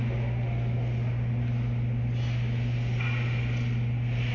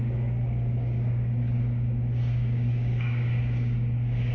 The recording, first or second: first